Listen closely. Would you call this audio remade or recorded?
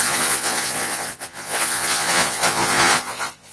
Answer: remade